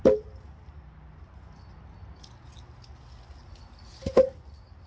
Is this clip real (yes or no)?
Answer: yes